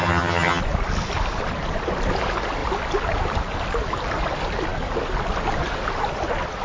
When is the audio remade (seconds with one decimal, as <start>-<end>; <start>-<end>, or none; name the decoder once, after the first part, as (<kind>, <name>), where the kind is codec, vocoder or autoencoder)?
0.0-0.6 (vocoder, HiFi-GAN)

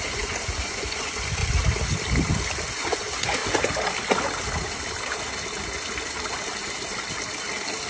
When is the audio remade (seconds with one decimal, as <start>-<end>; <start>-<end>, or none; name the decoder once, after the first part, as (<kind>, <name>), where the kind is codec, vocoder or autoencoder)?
0.0-1.4 (vocoder, Vocos); 2.7-3.4

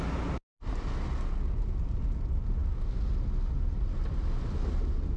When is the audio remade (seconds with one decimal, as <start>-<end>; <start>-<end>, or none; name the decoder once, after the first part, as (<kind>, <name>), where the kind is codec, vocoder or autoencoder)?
none

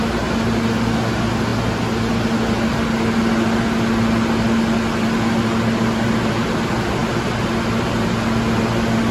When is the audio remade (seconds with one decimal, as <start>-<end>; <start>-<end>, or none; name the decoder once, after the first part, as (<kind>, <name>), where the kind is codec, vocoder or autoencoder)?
none

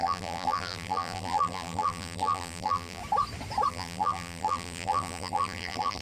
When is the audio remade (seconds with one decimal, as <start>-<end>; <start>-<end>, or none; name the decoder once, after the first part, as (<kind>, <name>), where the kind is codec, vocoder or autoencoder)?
0.0-3.0 (vocoder, BigVGAN v2); 3.7-6.0

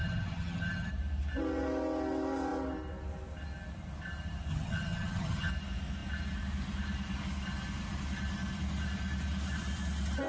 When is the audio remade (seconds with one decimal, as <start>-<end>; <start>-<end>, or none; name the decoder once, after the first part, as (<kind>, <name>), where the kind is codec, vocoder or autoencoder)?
0.0-0.9 (vocoder, HiFi-GAN); 4.5-5.5

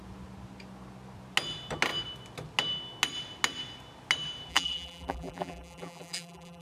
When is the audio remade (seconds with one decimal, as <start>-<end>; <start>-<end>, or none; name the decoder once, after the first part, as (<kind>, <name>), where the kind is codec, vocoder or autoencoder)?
4.5-6.6 (vocoder, BigVGAN v2)

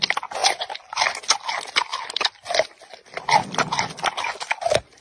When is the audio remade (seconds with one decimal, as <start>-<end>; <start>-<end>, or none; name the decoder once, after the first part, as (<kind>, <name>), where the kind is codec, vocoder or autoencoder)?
none